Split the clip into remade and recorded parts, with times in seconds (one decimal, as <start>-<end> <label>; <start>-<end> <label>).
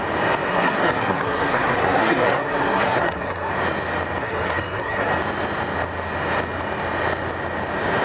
0.0-0.5 recorded; 0.5-3.5 remade; 3.5-4.2 recorded; 4.2-5.1 remade; 5.1-8.0 recorded